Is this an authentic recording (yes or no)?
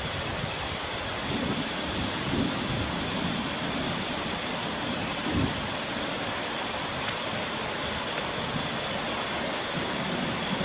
yes